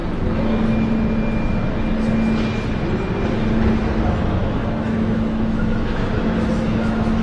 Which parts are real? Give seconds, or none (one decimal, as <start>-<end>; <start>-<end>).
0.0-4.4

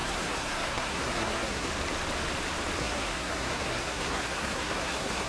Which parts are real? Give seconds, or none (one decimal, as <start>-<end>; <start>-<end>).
1.7-2.8

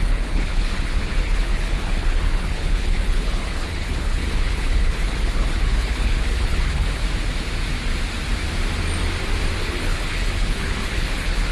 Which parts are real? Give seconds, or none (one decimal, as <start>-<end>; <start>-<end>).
7.0-9.6